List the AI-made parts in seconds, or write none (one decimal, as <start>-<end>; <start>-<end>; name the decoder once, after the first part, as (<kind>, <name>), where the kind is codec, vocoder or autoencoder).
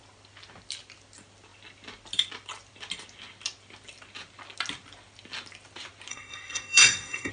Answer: 6.1-7.3 (codec, SNAC)